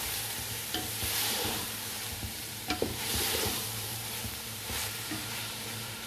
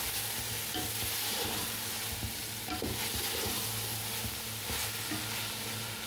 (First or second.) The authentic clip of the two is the second